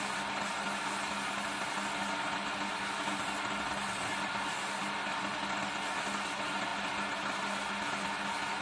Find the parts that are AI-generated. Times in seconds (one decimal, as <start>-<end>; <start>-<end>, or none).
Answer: none